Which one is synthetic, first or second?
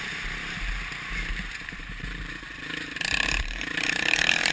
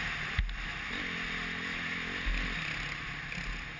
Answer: first